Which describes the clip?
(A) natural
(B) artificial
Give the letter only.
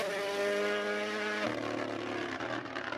A